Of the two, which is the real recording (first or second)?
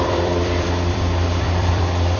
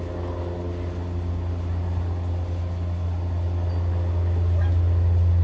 second